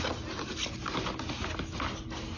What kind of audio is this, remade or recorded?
recorded